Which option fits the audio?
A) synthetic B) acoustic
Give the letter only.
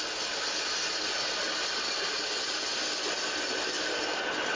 B